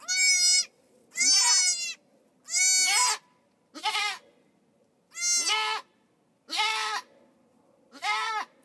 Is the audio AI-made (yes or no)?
no